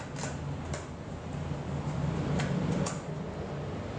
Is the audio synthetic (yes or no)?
no